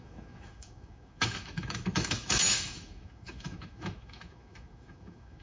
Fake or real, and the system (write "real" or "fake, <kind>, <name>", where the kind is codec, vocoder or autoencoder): fake, autoencoder, DAC-VAE